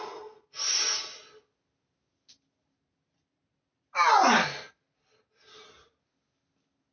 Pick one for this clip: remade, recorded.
recorded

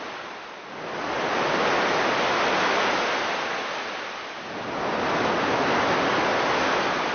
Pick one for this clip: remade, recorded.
recorded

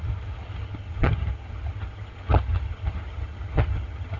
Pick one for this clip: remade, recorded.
remade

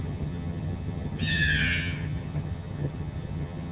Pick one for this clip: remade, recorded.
remade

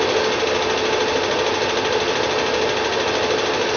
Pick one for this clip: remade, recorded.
recorded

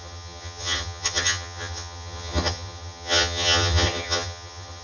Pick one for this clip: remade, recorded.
remade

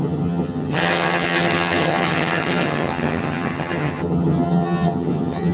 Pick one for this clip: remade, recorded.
remade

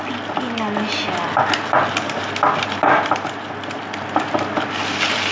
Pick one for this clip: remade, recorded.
recorded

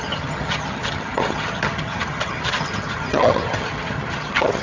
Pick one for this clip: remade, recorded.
remade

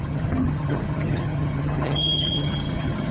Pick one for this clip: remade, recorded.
remade